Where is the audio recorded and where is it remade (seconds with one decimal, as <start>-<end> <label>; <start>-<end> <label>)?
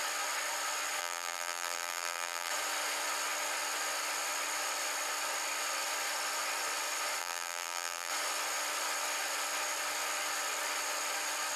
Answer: 0.0-1.0 recorded; 1.0-2.5 remade; 2.5-7.2 recorded; 7.2-8.1 remade; 8.1-11.6 recorded